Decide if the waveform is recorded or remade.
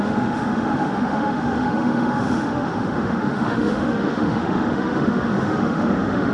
remade